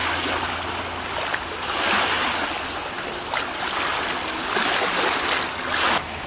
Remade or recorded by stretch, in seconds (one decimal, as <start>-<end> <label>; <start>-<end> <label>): 0.0-6.3 recorded